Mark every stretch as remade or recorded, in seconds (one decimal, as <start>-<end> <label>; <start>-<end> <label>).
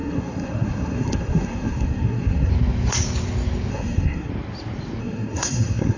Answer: 0.0-2.5 remade; 2.5-3.7 recorded; 3.7-4.3 remade; 4.3-5.0 recorded; 5.0-6.0 remade